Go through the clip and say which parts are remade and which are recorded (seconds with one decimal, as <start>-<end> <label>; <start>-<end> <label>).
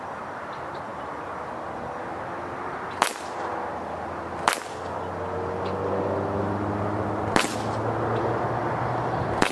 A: 0.0-9.5 recorded